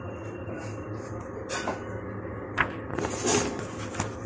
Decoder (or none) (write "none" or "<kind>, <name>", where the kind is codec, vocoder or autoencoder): none